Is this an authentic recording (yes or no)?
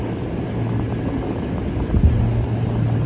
yes